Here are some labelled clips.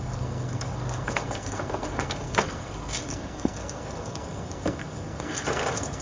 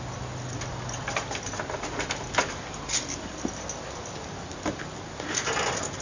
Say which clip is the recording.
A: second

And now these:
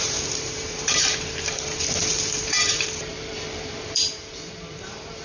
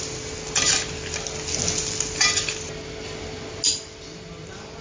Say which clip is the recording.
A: second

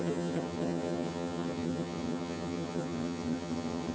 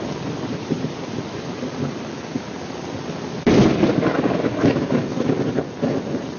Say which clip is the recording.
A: second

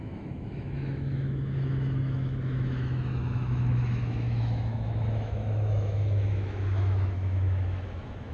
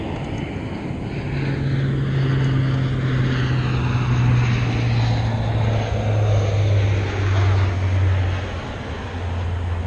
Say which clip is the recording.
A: second